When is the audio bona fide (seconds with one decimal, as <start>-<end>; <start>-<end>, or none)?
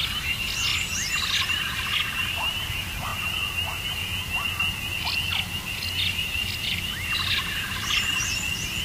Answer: 0.7-2.3; 3.1-6.1